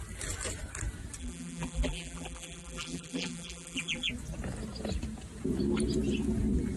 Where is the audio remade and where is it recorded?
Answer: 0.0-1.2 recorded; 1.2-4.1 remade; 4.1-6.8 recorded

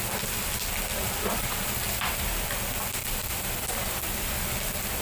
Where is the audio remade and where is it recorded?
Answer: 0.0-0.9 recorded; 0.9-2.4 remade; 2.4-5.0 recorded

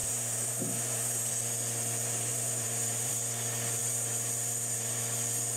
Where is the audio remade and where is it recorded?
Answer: 0.0-1.3 remade; 1.3-2.3 recorded; 2.3-3.1 remade; 3.1-5.6 recorded

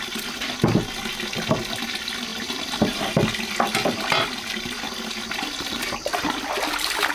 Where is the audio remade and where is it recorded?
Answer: 0.0-2.3 recorded; 2.3-3.0 remade; 3.0-7.1 recorded

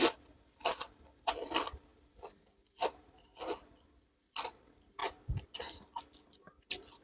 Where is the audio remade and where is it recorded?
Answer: 0.0-7.0 recorded

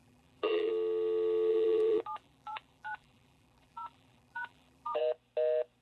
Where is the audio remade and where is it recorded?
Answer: 0.0-0.7 remade; 0.7-1.5 recorded; 1.5-5.0 remade; 5.0-5.8 recorded

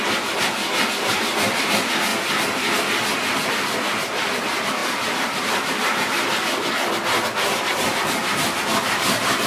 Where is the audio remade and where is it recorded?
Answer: 0.0-2.1 remade; 2.1-3.5 recorded; 3.5-9.5 remade